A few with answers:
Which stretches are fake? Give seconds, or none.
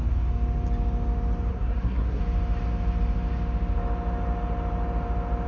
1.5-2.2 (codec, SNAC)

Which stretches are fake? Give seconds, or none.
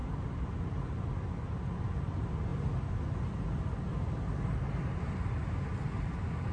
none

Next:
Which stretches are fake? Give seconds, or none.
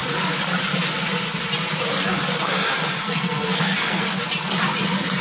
3.0-4.2 (codec, SNAC)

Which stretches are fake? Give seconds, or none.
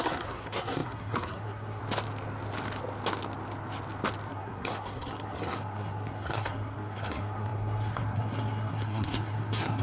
0.0-1.8 (codec, SNAC); 4.3-9.8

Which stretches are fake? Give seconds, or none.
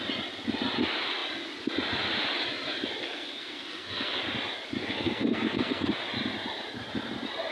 3.0-4.2 (codec, SNAC); 4.8-5.9